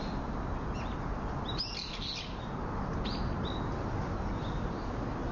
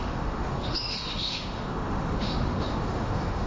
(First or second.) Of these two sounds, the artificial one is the second